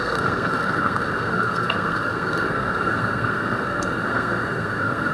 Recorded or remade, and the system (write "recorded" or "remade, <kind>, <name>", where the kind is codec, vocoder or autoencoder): remade, codec, SNAC